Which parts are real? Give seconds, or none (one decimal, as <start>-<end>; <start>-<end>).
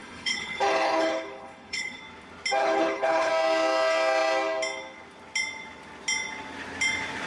2.0-2.6; 3.3-7.3